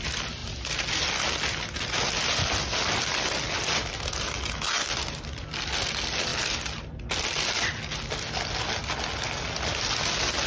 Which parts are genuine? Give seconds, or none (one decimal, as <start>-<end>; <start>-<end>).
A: 0.0-10.5